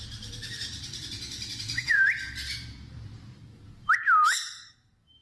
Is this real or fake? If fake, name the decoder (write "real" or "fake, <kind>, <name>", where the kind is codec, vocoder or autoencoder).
fake, vocoder, BigVGAN v2